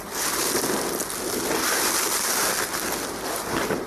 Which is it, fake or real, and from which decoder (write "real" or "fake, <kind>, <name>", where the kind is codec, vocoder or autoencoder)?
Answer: real